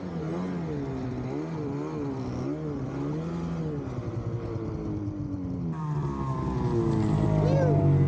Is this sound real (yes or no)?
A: yes